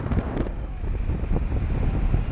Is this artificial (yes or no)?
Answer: no